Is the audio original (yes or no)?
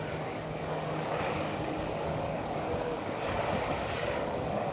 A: no